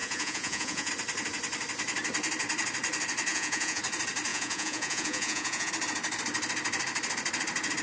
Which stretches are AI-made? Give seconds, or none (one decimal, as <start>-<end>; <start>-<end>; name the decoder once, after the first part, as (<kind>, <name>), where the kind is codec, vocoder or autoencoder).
0.0-0.9 (vocoder, Vocos); 3.3-3.8; 4.3-5.7